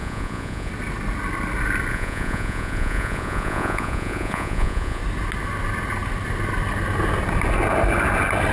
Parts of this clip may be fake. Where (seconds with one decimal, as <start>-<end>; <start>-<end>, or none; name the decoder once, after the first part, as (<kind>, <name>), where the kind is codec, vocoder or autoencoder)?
0.0-0.7 (vocoder, Vocos); 1.9-5.0